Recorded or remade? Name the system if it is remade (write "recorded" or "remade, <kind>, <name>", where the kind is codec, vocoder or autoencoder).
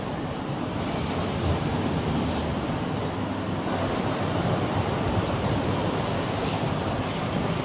remade, vocoder, BigVGAN v2